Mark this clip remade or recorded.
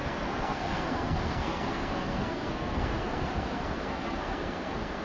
remade